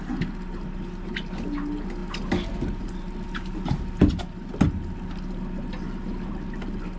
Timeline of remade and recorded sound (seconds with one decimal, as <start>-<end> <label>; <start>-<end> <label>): 0.0-7.0 recorded